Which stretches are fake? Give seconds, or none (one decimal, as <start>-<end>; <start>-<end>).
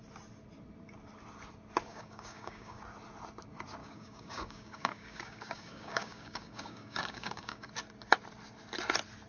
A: 1.9-2.8; 3.8-7.7